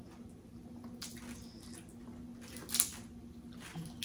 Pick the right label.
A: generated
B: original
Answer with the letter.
B